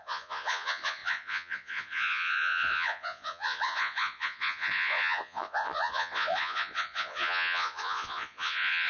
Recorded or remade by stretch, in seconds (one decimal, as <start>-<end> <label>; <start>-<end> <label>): 0.0-8.9 remade